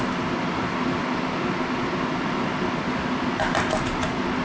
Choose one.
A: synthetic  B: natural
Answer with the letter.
B